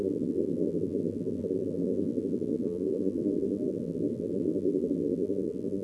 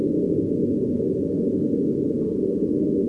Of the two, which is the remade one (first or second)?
first